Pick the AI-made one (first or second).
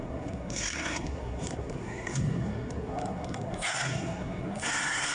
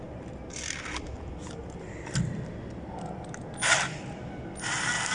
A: first